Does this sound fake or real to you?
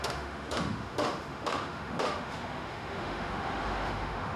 fake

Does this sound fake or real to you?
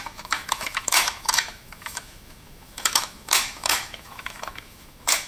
fake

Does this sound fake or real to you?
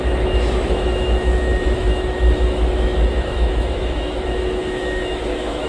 fake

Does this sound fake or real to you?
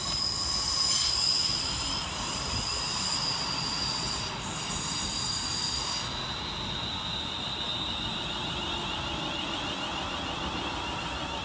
real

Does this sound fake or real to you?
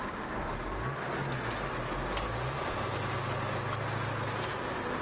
real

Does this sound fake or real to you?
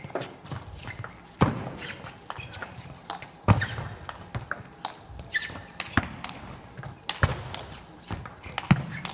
real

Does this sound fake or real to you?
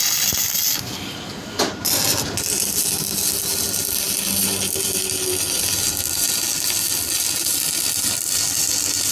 real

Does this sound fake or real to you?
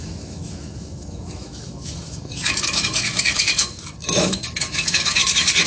fake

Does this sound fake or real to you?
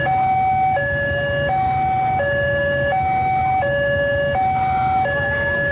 fake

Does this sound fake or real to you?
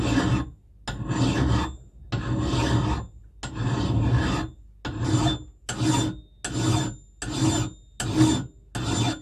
real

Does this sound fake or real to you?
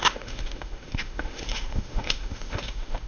fake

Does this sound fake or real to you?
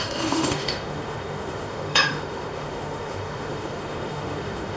fake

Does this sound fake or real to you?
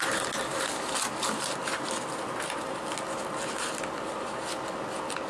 real